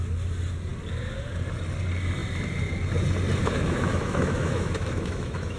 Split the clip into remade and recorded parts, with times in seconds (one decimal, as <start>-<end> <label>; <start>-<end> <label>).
0.0-3.4 recorded; 3.4-5.6 remade